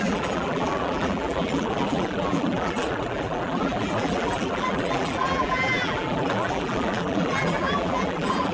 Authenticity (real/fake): fake